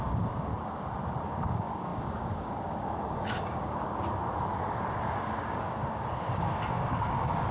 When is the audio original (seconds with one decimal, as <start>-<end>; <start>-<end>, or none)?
0.5-1.2; 4.2-5.2